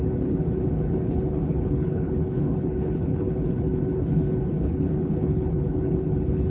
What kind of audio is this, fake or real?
fake